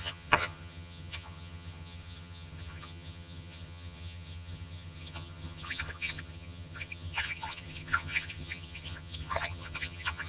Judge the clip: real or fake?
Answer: fake